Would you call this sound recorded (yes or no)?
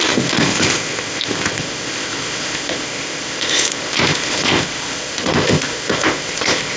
no